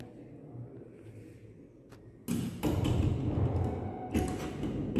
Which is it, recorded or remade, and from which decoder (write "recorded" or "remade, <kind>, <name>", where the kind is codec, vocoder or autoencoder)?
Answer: recorded